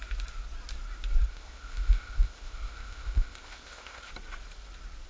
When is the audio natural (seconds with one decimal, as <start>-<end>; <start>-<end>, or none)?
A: 0.0-1.3; 4.1-5.1